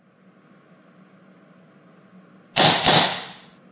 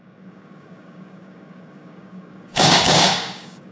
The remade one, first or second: second